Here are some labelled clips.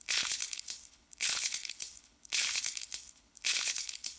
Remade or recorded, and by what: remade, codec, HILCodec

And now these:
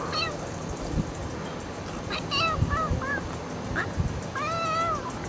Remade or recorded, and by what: recorded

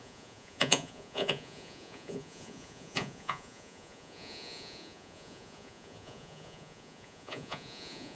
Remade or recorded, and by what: remade, vocoder, Vocos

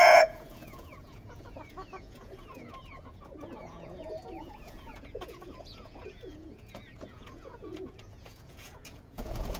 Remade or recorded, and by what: remade, vocoder, Vocos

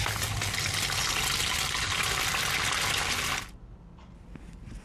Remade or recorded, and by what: recorded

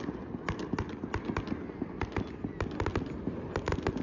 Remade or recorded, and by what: recorded